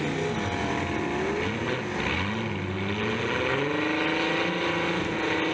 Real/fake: real